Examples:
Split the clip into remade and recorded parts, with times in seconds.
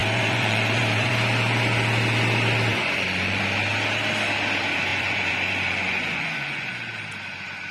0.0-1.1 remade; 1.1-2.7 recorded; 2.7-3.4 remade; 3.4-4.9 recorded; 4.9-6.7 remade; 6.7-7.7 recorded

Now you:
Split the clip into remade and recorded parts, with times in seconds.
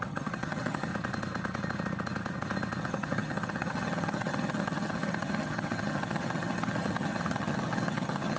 0.0-0.9 remade; 0.9-2.8 recorded; 2.8-8.4 remade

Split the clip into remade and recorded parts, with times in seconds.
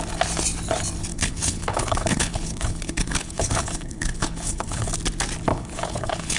0.0-1.1 recorded; 1.1-4.9 remade; 4.9-5.5 recorded; 5.5-6.4 remade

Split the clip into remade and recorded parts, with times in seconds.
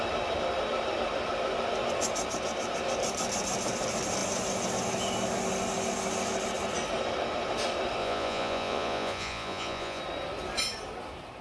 0.0-8.0 recorded; 8.0-10.0 remade; 10.0-11.4 recorded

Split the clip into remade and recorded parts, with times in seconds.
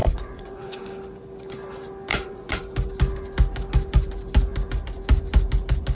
0.0-0.8 remade; 0.8-2.1 recorded; 2.1-2.6 remade; 2.6-5.9 recorded